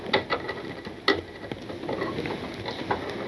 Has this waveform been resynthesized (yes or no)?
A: no